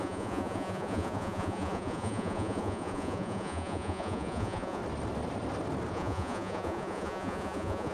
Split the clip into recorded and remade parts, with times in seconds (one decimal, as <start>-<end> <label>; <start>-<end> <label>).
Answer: 0.0-4.8 remade; 4.8-5.9 recorded; 5.9-7.9 remade